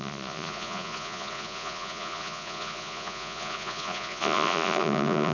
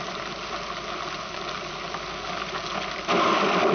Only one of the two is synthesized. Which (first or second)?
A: first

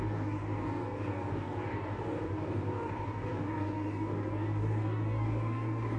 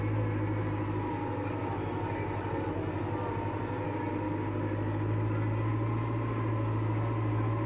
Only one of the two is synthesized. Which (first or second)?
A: first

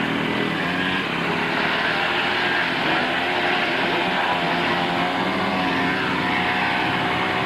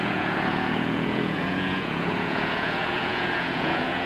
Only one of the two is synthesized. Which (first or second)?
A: second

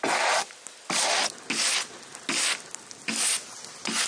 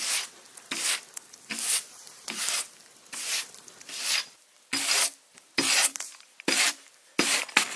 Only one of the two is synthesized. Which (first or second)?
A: second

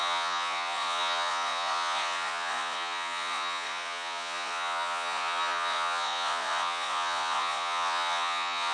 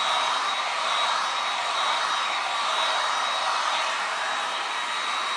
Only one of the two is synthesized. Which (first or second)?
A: first